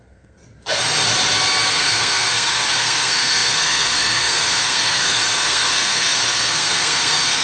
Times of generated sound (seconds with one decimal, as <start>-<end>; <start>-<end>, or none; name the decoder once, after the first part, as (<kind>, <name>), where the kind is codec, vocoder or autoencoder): 0.0-0.4 (codec, SNAC); 1.7-7.4